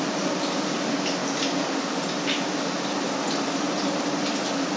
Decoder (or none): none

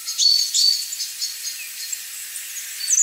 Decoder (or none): none